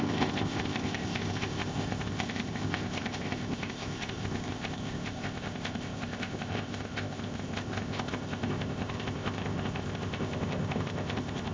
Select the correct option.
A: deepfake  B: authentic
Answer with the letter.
A